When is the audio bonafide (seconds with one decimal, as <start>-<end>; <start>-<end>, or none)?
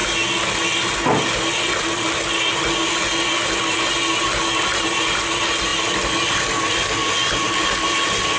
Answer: 0.0-8.4